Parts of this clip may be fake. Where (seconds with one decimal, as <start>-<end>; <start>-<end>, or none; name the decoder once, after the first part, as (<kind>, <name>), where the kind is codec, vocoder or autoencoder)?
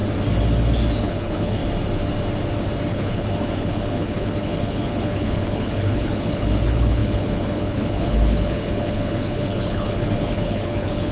1.0-1.6 (codec, HILCodec); 2.9-11.1